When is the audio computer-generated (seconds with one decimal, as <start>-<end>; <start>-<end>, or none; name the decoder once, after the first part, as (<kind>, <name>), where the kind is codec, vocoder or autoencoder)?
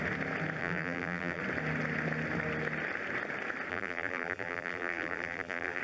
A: 0.6-1.4 (vocoder, BigVGAN v2); 3.7-5.8